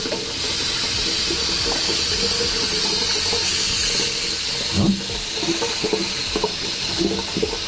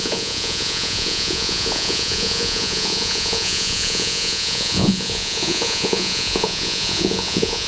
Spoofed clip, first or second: second